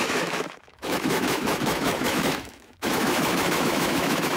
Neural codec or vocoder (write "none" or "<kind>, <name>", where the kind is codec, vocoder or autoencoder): autoencoder, DAC-VAE